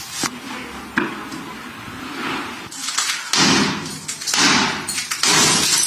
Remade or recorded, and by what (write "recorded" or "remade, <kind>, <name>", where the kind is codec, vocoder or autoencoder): recorded